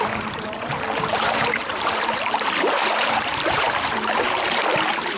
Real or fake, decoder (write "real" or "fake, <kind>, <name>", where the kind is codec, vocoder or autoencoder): fake, vocoder, BigVGAN v2